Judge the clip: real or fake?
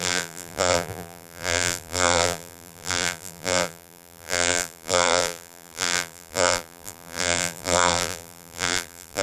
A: fake